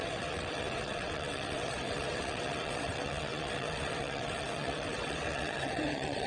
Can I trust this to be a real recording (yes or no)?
no